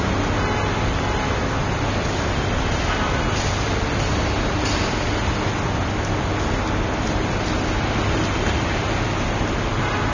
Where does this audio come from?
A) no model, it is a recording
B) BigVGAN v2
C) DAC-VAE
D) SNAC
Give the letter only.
A